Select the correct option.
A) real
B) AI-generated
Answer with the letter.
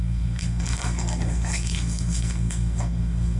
B